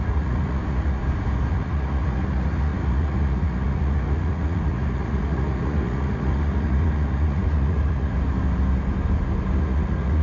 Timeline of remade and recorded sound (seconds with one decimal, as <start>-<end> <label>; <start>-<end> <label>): 0.0-1.0 remade; 1.0-1.5 recorded; 1.5-8.1 remade; 8.1-9.6 recorded; 9.6-10.2 remade